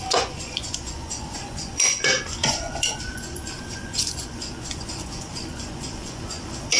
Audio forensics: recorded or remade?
remade